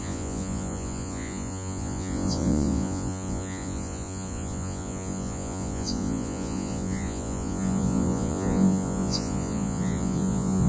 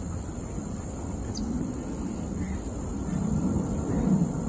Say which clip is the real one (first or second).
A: second